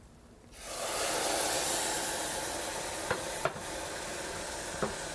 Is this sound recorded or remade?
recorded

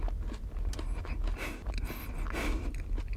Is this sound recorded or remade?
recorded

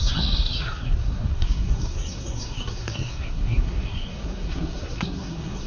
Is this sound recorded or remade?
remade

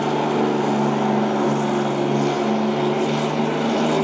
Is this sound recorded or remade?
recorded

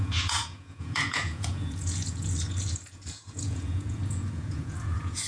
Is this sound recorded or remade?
remade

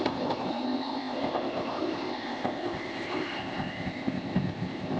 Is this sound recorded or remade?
remade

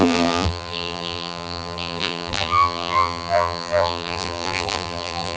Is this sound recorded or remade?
remade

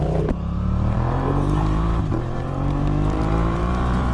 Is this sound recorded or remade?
remade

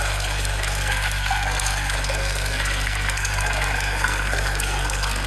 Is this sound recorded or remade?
remade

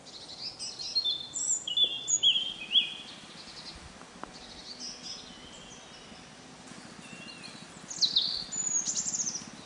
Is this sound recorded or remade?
recorded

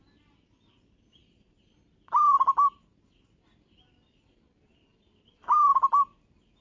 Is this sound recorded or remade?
recorded